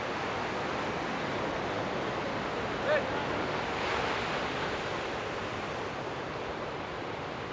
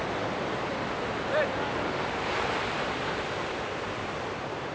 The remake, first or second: second